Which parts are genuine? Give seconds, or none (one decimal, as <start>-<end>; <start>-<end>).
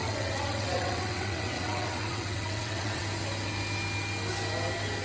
3.0-5.0